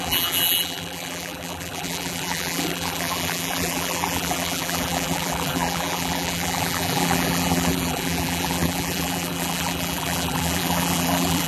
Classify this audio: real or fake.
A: fake